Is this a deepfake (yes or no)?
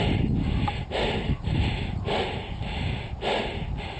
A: no